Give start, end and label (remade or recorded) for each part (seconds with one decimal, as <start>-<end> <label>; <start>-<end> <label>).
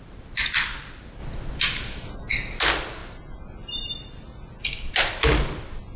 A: 0.0-6.0 recorded